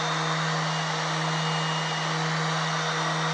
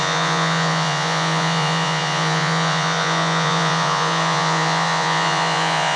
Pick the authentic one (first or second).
first